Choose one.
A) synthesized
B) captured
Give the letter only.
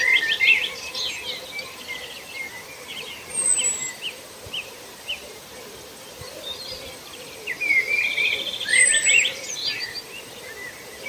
A